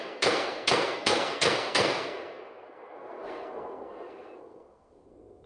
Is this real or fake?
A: fake